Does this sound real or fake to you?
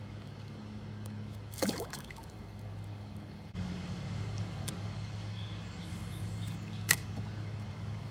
fake